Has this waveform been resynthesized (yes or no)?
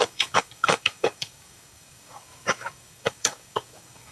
yes